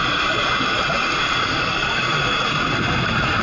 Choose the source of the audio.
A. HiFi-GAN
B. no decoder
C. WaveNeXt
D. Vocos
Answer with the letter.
B